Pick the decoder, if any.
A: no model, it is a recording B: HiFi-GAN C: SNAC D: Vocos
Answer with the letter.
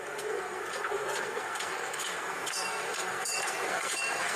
C